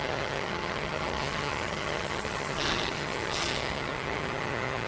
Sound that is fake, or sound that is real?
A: fake